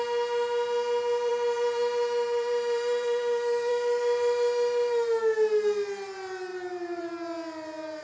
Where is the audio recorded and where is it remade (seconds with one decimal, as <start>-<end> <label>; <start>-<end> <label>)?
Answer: 0.0-1.3 recorded; 1.3-3.7 remade; 3.7-6.5 recorded; 6.5-7.0 remade; 7.0-8.0 recorded